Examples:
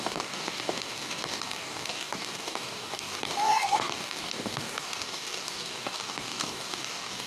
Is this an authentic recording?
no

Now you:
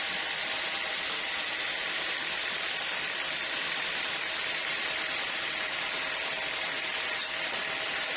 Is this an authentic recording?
no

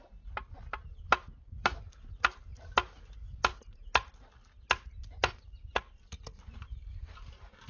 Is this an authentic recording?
yes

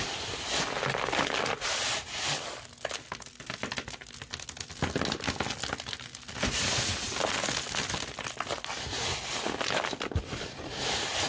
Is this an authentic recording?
yes